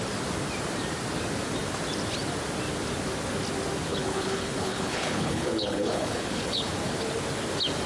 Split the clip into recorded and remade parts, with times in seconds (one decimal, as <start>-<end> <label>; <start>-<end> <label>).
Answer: 0.0-3.9 recorded; 3.9-6.7 remade; 6.7-7.9 recorded

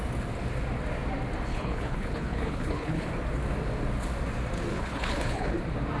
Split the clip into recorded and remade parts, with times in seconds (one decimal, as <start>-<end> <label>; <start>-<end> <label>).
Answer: 0.0-1.5 recorded; 1.5-3.1 remade; 3.1-4.7 recorded; 4.7-5.6 remade; 5.6-6.0 recorded

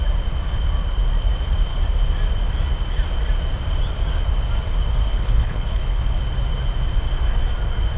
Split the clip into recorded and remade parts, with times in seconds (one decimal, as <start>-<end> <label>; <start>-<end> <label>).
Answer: 0.0-5.1 recorded; 5.1-6.0 remade; 6.0-8.0 recorded

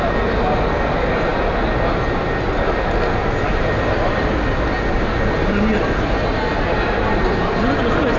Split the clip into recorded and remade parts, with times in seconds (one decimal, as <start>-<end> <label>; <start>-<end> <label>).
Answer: 0.0-8.2 recorded